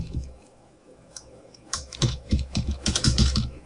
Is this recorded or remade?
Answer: remade